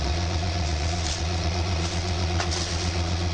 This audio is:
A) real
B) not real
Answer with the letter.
B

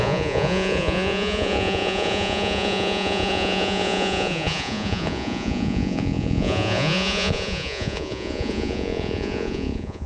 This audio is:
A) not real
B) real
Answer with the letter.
A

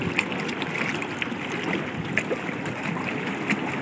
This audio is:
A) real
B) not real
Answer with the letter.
A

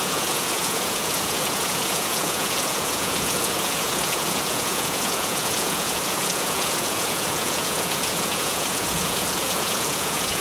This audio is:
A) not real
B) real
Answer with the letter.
A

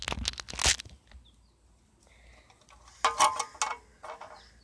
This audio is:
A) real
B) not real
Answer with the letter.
A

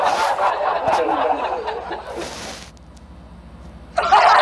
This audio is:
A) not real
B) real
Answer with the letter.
B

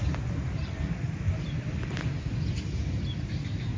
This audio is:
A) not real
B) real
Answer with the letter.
B